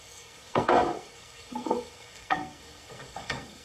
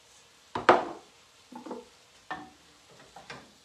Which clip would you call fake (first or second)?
first